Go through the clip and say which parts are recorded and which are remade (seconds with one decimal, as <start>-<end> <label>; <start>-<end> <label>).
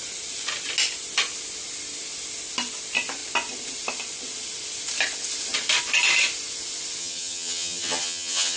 0.0-7.0 recorded; 7.0-8.6 remade